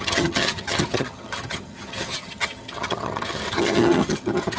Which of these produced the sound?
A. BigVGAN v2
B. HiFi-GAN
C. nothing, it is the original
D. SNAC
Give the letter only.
B